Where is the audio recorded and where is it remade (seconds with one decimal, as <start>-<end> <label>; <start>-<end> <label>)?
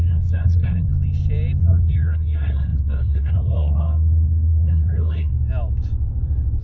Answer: 0.0-0.9 remade; 0.9-1.6 recorded; 1.6-5.3 remade; 5.3-6.6 recorded